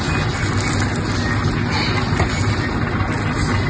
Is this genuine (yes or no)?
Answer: yes